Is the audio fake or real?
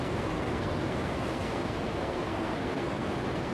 fake